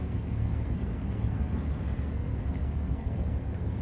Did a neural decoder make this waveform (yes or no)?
yes